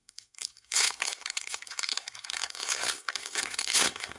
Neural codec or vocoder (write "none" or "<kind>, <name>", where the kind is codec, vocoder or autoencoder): codec, SNAC